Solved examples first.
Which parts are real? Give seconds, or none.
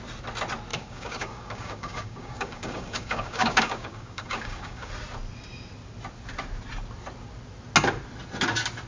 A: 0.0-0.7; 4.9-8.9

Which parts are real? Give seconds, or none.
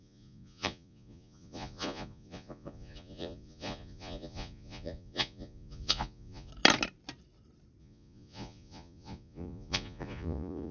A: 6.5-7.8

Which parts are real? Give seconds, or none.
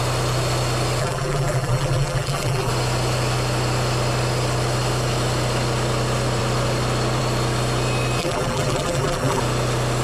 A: 0.0-1.0; 2.7-8.2; 9.4-10.0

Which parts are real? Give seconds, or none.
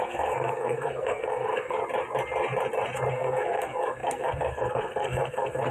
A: 1.8-3.1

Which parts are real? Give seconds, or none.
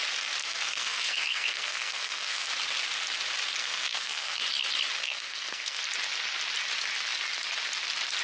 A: 0.0-0.4; 2.5-3.6; 4.4-5.0; 5.8-8.2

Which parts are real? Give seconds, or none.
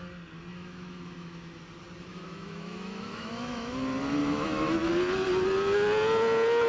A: 0.0-0.5; 1.6-2.1; 3.8-4.2; 4.9-6.7